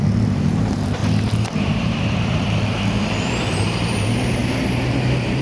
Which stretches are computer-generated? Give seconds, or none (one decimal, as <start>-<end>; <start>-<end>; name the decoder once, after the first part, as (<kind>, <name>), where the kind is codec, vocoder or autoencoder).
0.0-1.0 (vocoder, BigVGAN v2); 1.5-4.4; 5.0-5.4